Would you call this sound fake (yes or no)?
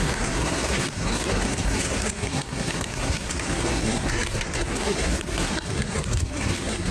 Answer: yes